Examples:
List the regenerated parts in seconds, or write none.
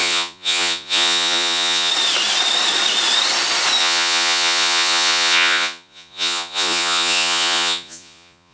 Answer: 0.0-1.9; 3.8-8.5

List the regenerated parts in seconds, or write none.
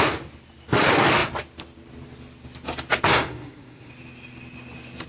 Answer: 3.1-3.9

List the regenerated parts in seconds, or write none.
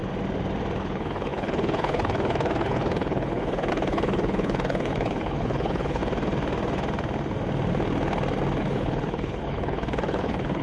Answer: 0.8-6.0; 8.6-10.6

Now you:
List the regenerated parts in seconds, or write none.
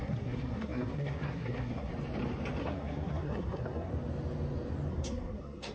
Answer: 0.0-1.9; 2.6-3.9; 4.9-5.7